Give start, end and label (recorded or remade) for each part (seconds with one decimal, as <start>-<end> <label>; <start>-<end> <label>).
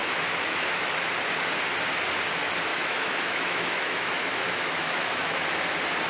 0.0-1.1 remade; 1.1-2.7 recorded; 2.7-5.4 remade; 5.4-6.1 recorded